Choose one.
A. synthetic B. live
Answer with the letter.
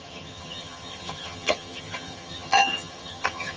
A